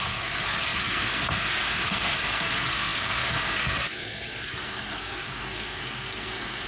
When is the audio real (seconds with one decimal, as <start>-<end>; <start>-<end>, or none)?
none